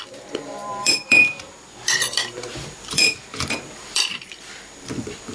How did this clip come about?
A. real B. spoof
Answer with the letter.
B